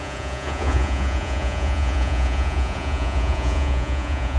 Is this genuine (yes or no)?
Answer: no